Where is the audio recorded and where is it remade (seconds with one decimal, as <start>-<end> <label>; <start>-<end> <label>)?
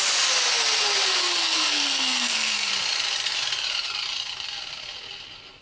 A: 0.0-1.2 recorded; 1.2-2.7 remade; 2.7-5.6 recorded